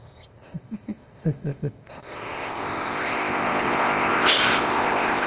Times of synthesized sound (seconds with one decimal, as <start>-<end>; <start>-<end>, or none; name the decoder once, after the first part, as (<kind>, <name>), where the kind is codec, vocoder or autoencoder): 0.0-5.3 (codec, ZipCodec)